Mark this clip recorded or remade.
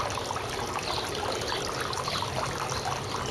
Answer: recorded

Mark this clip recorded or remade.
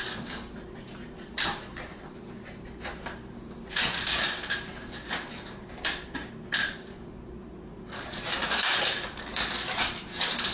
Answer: remade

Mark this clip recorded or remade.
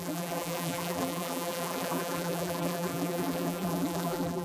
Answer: remade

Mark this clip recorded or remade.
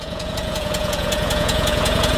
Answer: remade